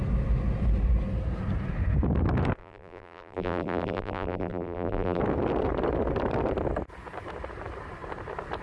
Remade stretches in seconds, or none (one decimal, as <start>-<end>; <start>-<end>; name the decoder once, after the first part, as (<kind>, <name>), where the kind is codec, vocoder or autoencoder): 2.6-5.2 (vocoder, BigVGAN v2)